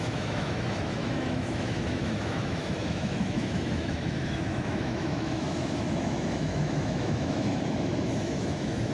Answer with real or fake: fake